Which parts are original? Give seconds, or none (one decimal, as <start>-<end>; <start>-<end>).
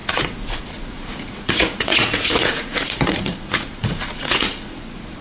none